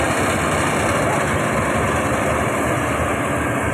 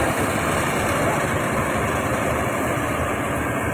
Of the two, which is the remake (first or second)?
second